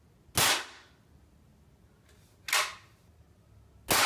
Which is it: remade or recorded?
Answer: recorded